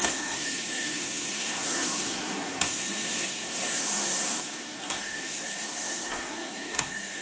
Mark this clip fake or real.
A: fake